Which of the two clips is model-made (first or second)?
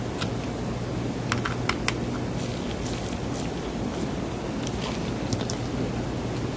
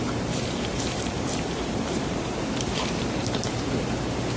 second